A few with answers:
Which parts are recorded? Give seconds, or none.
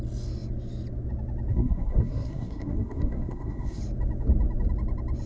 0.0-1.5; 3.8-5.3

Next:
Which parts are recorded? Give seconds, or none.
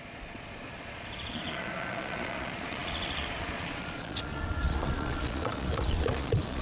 none